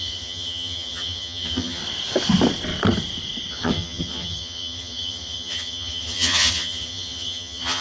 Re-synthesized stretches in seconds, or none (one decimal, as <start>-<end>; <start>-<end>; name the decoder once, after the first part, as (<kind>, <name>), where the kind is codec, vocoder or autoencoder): 0.0-1.8 (vocoder, HiFi-GAN); 3.5-7.8